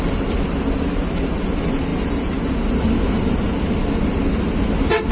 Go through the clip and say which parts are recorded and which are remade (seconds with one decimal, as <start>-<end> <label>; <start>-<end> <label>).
0.0-1.9 recorded; 1.9-3.2 remade; 3.2-5.1 recorded